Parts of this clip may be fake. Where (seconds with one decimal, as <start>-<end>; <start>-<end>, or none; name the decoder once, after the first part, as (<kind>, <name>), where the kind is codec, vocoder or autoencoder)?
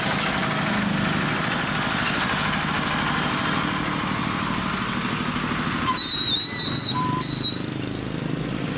none